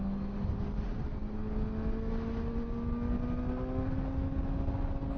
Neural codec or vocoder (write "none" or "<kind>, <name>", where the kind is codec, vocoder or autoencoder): none